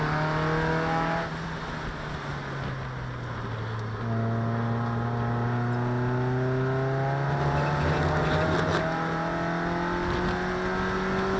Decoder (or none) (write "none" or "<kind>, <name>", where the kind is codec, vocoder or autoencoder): none